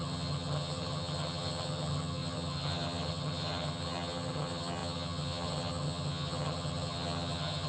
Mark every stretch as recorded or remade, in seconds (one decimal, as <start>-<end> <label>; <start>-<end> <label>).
0.0-7.7 remade